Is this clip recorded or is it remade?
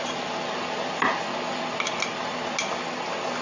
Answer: recorded